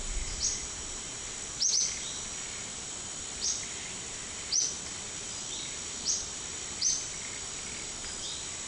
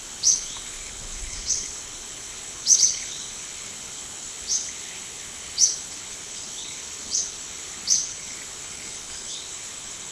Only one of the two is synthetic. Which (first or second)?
second